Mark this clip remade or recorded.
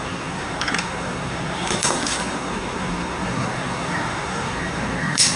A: remade